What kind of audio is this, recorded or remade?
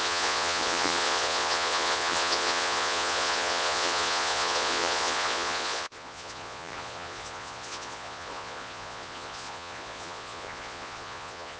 remade